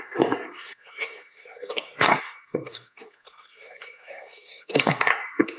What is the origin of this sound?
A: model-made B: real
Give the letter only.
A